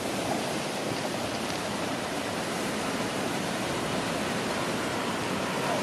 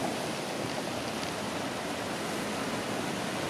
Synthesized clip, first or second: first